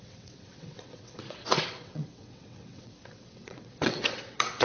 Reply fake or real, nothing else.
fake